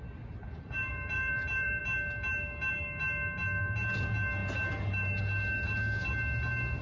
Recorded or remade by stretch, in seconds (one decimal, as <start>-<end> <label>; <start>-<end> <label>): 0.0-0.9 recorded; 0.9-1.8 remade; 1.8-6.8 recorded